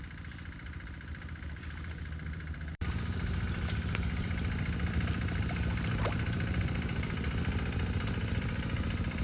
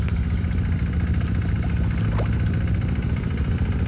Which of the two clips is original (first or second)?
second